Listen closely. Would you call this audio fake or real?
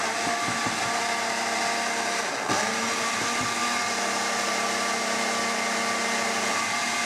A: real